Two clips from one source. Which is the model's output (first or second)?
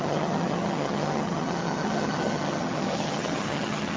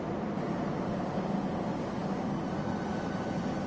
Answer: first